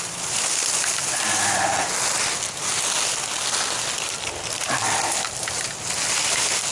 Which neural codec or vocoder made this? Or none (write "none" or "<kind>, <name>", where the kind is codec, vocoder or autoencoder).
none